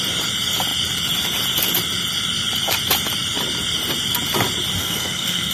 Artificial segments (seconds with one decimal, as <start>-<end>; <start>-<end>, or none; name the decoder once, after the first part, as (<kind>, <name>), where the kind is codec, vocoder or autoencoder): 4.8-5.5 (codec, SNAC)